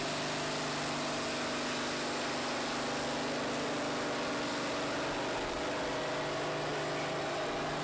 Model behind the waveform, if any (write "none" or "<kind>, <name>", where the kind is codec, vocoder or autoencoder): none